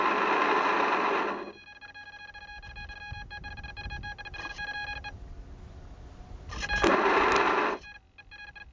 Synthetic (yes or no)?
no